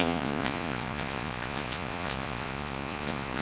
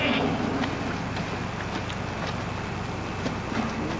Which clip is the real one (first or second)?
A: second